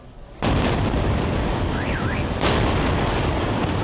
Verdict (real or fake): real